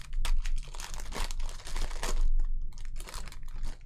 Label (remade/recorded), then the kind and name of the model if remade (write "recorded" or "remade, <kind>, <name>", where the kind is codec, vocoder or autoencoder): recorded